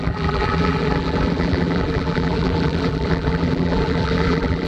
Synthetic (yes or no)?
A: yes